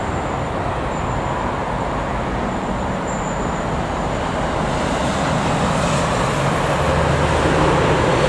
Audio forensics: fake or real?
real